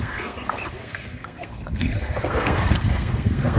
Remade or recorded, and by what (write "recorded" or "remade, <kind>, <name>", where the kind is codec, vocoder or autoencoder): remade, codec, SNAC